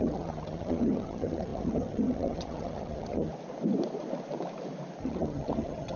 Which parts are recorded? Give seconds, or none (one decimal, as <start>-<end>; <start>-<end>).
3.3-5.0